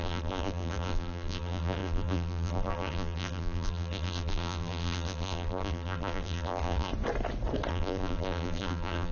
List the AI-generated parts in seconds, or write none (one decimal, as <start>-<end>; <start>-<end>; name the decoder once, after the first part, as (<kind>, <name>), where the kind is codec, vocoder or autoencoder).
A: 0.0-6.9 (vocoder, BigVGAN v2); 7.7-9.1